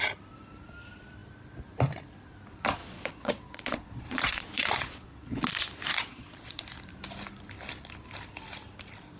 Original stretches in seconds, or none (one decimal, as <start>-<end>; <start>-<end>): 0.0-2.8; 5.5-5.9; 6.6-9.2